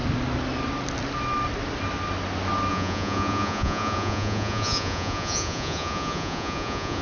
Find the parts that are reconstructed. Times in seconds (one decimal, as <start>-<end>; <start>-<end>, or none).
2.7-7.0